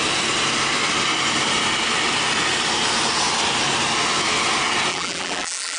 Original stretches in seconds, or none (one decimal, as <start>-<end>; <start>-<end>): 0.0-4.9